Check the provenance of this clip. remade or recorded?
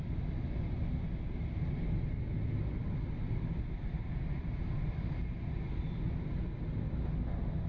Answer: recorded